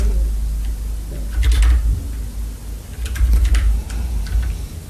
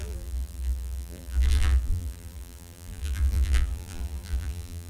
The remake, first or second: second